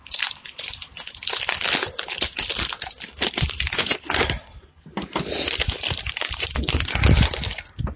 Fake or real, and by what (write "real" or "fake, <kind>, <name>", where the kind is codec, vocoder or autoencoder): fake, vocoder, BigVGAN v2